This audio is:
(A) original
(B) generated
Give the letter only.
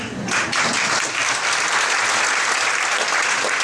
A